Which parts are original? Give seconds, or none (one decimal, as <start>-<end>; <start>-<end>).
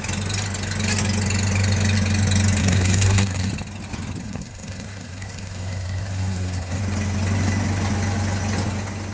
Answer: 0.0-2.6; 3.5-4.2; 6.8-9.1